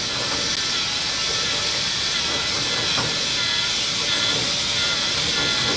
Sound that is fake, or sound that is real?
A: real